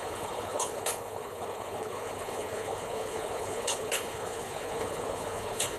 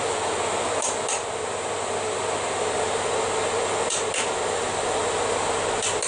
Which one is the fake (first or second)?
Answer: first